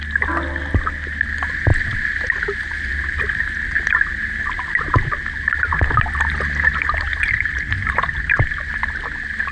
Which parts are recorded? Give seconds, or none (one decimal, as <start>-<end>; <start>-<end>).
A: 0.0-9.5

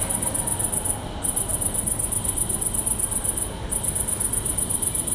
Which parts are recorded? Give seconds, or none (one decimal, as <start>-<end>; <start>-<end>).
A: 0.0-5.1

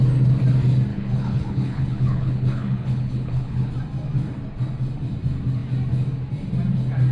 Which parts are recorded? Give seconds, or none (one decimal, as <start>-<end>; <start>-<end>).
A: 0.0-0.9; 3.7-7.1